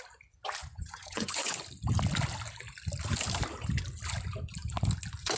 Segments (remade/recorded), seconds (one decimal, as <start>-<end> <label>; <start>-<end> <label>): 0.0-0.6 recorded; 0.6-1.6 remade; 1.6-5.4 recorded